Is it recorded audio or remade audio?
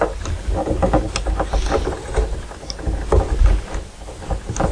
recorded